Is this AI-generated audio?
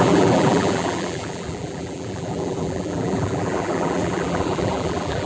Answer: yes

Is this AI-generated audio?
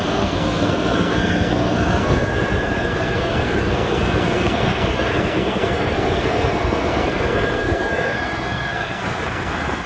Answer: yes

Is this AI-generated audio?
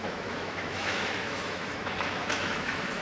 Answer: yes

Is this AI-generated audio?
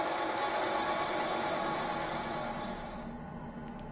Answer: no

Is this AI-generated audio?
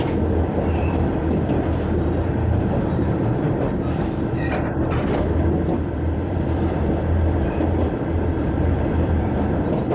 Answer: yes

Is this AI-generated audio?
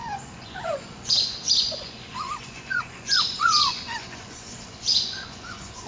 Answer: yes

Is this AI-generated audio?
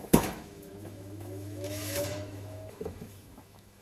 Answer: yes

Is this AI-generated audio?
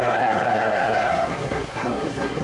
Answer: yes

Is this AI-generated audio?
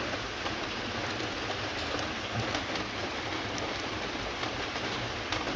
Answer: no